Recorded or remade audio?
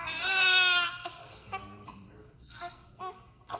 remade